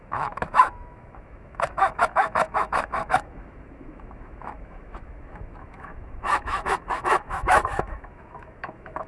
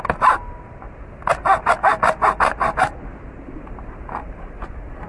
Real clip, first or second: second